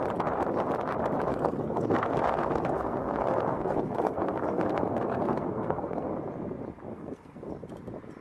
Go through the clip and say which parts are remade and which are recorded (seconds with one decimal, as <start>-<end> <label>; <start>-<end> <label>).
0.0-1.3 recorded; 1.3-6.1 remade; 6.1-6.9 recorded; 6.9-7.5 remade; 7.5-8.2 recorded